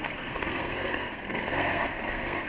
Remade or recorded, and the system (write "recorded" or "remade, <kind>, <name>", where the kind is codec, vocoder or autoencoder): remade, codec, SNAC